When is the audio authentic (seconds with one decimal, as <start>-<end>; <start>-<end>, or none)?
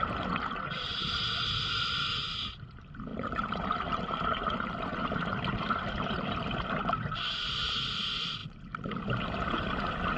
0.0-10.2